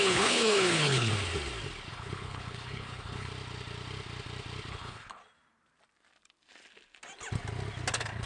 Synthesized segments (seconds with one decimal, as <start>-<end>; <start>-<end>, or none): 0.0-1.1; 1.9-3.3; 4.7-5.2; 7.9-8.3